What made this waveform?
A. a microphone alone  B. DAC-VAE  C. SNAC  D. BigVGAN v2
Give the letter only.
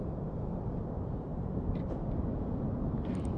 A